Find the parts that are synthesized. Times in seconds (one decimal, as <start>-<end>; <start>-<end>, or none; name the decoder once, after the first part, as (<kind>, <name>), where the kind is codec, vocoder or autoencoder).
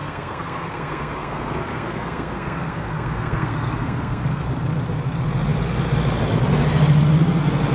0.0-4.4 (codec, SNAC)